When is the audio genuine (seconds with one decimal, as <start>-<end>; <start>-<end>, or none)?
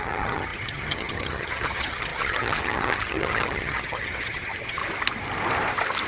4.8-6.1